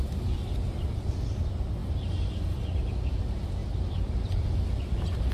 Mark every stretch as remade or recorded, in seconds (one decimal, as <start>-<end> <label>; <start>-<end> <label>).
0.0-5.3 recorded